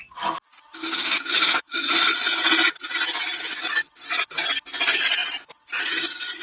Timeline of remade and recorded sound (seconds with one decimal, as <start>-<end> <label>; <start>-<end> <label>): 0.0-0.8 recorded; 0.8-1.9 remade; 1.9-6.4 recorded